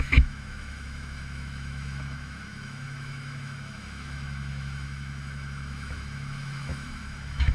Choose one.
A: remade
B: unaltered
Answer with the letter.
A